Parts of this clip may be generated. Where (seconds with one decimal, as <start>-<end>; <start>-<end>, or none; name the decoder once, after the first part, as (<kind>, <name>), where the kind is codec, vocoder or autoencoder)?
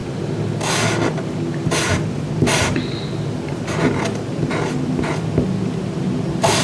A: 1.7-6.6 (vocoder, BigVGAN v2)